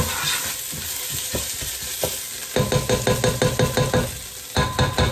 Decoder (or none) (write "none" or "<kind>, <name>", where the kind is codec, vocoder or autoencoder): none